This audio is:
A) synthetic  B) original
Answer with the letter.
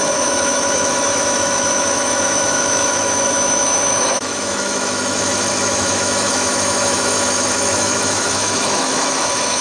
A